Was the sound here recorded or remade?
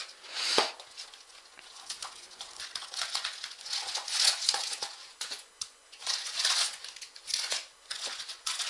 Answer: remade